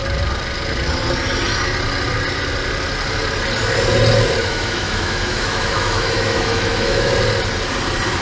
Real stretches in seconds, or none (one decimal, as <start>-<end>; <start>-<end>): 0.0-4.4; 7.1-8.2